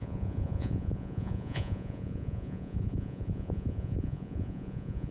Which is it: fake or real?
fake